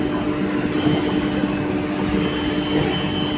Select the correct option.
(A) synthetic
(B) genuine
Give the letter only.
B